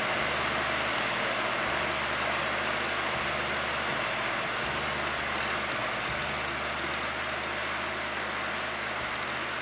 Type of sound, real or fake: real